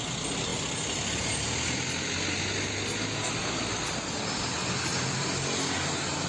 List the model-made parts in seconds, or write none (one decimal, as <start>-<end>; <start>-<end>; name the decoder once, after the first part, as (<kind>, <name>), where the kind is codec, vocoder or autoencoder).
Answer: none

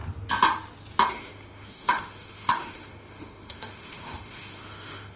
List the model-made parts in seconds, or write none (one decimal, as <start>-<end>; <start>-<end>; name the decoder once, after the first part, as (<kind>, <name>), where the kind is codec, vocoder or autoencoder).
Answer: 1.1-5.2 (autoencoder, DAC-VAE)